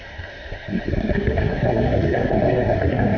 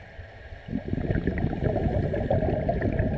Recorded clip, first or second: second